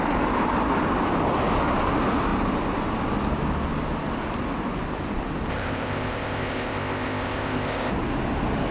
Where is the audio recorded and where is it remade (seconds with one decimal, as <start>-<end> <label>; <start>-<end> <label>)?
0.0-5.5 recorded; 5.5-7.9 remade; 7.9-8.7 recorded